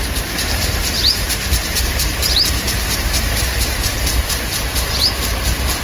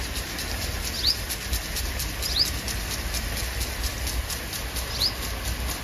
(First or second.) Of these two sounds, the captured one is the second